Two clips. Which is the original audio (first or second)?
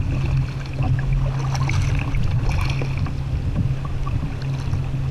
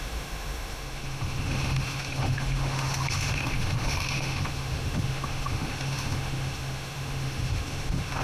first